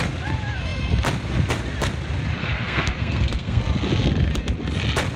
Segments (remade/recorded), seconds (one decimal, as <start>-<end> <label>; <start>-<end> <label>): 0.0-2.4 recorded; 2.4-3.6 remade; 3.6-5.2 recorded